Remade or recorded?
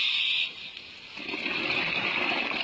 recorded